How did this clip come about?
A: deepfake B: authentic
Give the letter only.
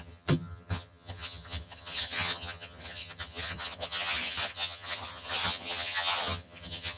A